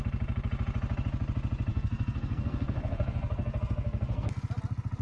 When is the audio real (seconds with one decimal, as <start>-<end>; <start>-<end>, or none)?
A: 0.0-1.7; 4.3-5.0